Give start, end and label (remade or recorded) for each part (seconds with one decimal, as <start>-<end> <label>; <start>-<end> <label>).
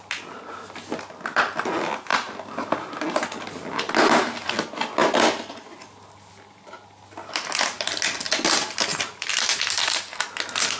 0.0-2.1 recorded; 2.1-4.5 remade; 4.5-5.0 recorded; 5.0-5.8 remade; 5.8-10.8 recorded